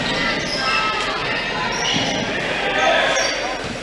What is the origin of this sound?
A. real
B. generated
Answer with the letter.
B